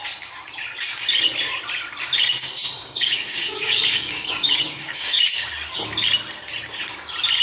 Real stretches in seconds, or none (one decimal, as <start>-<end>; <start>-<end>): 0.0-2.4; 5.5-7.4